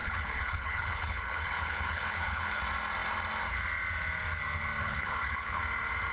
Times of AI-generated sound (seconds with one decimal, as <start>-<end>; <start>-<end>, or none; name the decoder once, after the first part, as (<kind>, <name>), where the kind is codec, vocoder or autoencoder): 0.0-2.6 (codec, HILCodec); 4.8-5.6